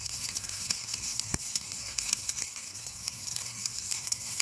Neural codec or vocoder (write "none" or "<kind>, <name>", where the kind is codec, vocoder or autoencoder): codec, SNAC